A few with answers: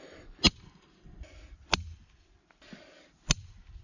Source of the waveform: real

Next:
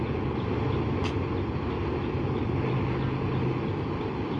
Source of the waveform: real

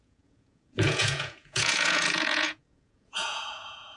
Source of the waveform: fake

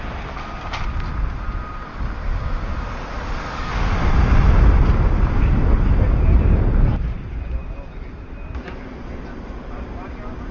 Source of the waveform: real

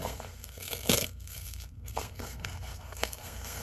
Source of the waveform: fake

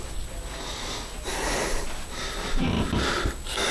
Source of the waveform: real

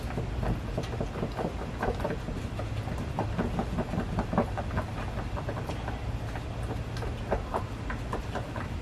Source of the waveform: real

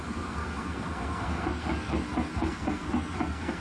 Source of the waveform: fake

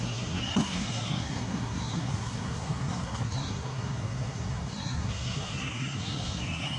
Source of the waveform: fake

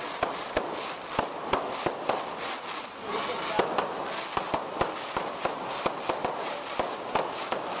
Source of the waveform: real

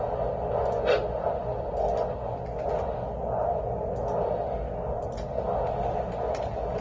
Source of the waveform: real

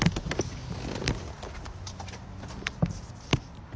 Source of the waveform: real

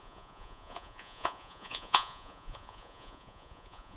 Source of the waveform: fake